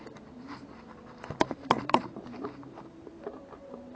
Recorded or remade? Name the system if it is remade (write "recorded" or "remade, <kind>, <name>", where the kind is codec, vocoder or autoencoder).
remade, vocoder, BigVGAN v2